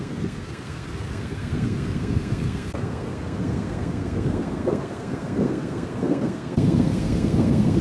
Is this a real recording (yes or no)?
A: no